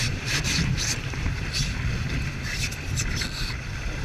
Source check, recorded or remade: remade